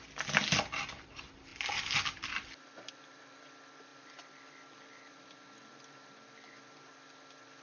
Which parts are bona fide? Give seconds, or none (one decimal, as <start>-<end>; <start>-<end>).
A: 0.0-7.6